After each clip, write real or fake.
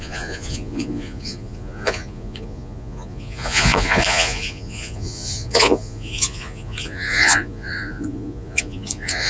fake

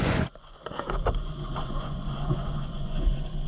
fake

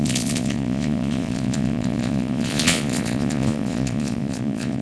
fake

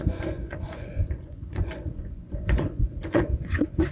fake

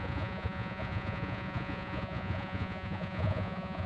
fake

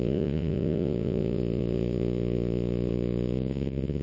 fake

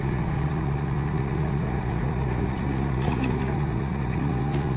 fake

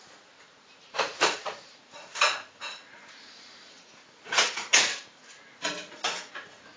fake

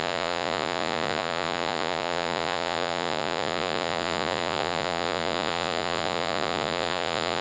fake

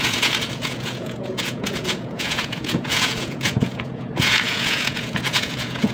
fake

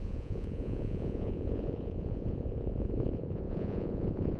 fake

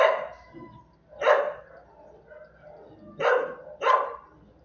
real